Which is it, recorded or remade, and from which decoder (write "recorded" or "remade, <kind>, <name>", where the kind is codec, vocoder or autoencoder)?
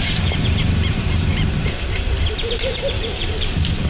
remade, vocoder, BigVGAN v2